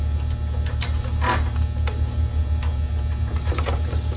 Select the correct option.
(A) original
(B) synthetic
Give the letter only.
A